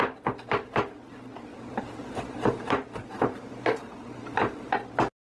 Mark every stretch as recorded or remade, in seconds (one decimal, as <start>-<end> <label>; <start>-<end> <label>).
0.0-1.5 recorded; 1.5-4.7 remade; 4.7-5.3 recorded